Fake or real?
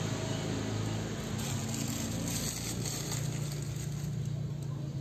real